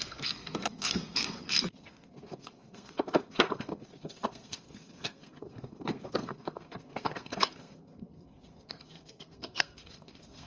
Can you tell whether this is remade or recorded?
remade